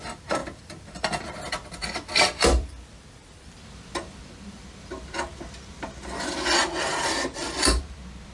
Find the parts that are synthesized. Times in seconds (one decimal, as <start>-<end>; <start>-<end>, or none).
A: 0.4-5.4; 6.9-7.8